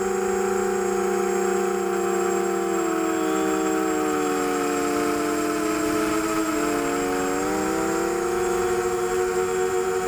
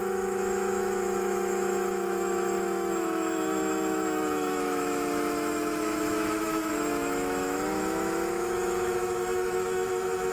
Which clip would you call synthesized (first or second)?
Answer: second